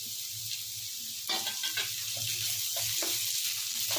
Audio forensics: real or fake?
real